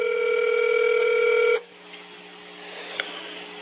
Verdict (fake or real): real